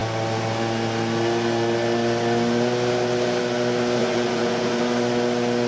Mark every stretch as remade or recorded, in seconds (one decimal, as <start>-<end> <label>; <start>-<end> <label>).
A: 0.0-4.0 recorded; 4.0-4.8 remade; 4.8-5.7 recorded

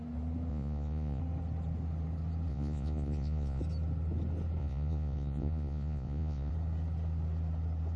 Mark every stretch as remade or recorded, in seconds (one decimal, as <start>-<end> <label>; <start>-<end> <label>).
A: 0.0-0.5 recorded; 0.5-1.2 remade; 1.2-2.5 recorded; 2.5-3.6 remade; 3.6-4.6 recorded; 4.6-6.5 remade; 6.5-8.0 recorded